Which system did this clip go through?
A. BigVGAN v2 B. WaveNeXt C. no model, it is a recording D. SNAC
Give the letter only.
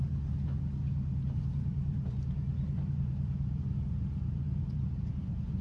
A